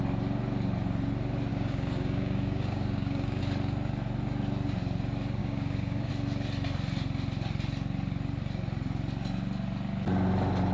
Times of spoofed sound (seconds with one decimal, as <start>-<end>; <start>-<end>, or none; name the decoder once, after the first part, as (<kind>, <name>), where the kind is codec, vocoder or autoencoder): 1.5-3.4 (codec, DAC); 5.4-6.1